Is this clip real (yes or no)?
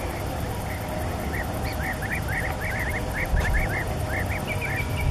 yes